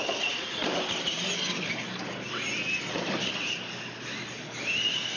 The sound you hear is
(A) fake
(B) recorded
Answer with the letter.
B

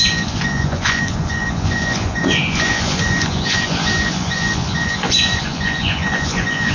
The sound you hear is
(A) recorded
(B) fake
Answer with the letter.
B